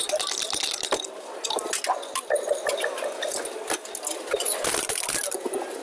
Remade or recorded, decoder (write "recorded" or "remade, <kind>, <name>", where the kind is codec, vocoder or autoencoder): recorded